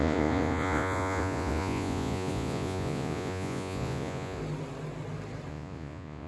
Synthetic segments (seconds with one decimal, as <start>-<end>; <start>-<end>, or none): 0.0-4.4; 5.5-6.3